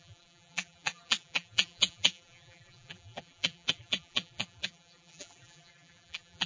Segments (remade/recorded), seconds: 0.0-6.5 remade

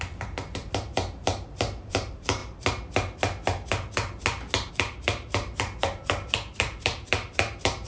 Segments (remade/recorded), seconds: 0.0-2.4 remade; 2.4-4.7 recorded; 4.7-7.9 remade

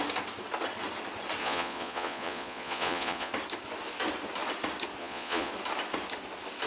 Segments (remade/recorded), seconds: 0.0-1.4 recorded; 1.4-3.3 remade; 3.3-5.0 recorded; 5.0-5.5 remade; 5.5-6.7 recorded

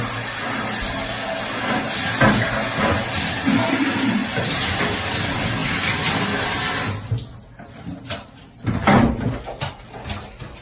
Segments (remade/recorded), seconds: 0.0-4.2 recorded; 4.2-4.8 remade; 4.8-10.6 recorded

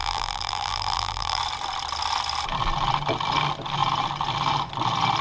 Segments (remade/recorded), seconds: 0.0-1.4 remade; 1.4-5.2 recorded